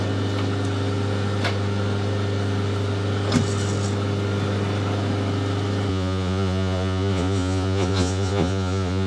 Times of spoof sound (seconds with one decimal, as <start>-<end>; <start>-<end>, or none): 5.9-9.1